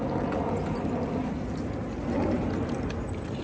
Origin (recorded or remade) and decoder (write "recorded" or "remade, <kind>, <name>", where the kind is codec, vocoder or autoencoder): recorded